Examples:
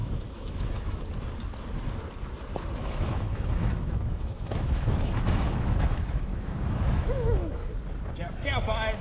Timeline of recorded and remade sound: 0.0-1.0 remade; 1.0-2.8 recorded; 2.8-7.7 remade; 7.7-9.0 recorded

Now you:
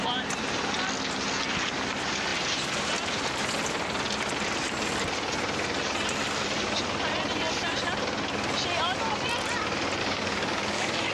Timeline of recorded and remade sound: 0.0-10.0 recorded; 10.0-11.1 remade

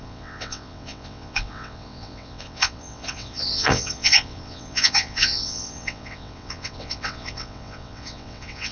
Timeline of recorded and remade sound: 0.0-8.7 remade

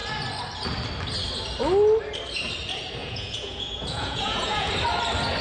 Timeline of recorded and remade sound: 0.0-3.0 recorded; 3.0-4.7 remade; 4.7-5.4 recorded

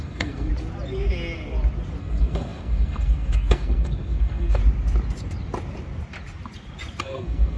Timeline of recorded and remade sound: 0.0-0.5 remade; 0.5-2.0 recorded; 2.0-4.6 remade; 4.6-7.0 recorded; 7.0-7.6 remade

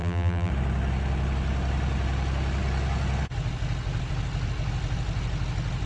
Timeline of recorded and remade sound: 0.0-0.5 remade; 0.5-5.9 recorded